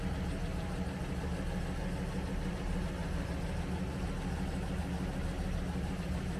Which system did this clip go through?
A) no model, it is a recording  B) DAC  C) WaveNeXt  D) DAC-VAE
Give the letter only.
A